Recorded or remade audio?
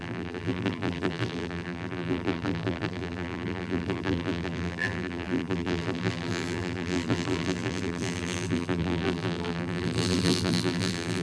remade